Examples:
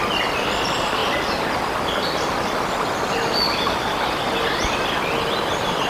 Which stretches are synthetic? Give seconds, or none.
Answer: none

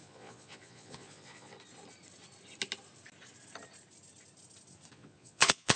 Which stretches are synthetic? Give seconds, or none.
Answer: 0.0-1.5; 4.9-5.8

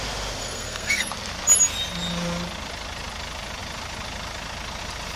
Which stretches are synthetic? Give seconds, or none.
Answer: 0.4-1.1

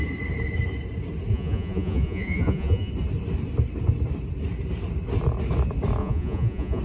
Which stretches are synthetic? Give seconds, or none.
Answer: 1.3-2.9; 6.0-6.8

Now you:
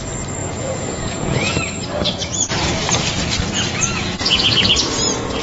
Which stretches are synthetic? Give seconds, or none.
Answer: 0.4-1.5

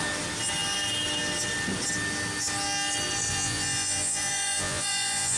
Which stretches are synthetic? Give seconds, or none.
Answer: 3.3-5.4

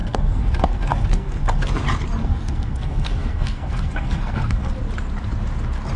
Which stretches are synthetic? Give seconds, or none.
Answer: 0.0-1.6; 2.2-4.7

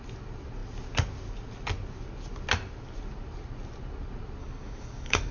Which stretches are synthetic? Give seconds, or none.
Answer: 4.4-5.3